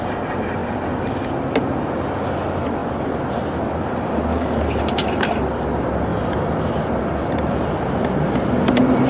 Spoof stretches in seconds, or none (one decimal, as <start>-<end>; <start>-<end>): 4.3-4.8